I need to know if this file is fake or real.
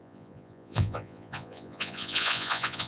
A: fake